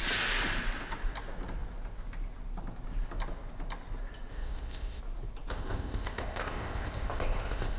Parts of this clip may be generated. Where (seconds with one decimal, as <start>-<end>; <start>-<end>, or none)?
4.3-5.0; 5.5-7.8